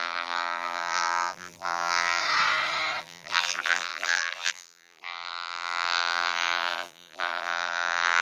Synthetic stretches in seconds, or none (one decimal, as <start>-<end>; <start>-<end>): 0.0-2.2; 3.0-8.2